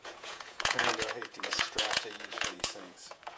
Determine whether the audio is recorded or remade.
remade